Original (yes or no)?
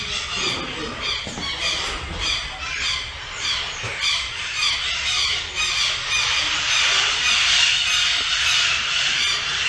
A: yes